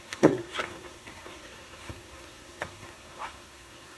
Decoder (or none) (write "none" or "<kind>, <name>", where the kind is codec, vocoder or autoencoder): codec, SNAC